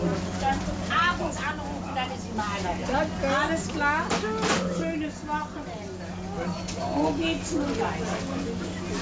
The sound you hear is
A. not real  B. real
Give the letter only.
B